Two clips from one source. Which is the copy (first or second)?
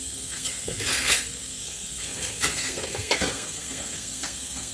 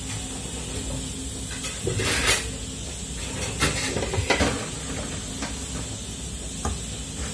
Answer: first